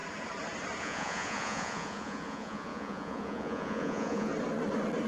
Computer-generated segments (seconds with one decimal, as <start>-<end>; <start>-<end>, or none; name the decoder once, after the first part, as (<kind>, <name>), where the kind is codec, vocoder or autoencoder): 0.8-4.3 (vocoder, Vocos)